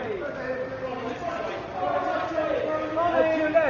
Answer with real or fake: real